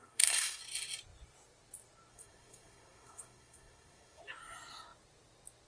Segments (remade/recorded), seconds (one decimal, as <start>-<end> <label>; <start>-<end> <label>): 0.0-0.6 remade; 0.6-2.1 recorded; 2.1-4.2 remade; 4.2-5.7 recorded